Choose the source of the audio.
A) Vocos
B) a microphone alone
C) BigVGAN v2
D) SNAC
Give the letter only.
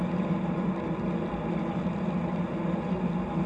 B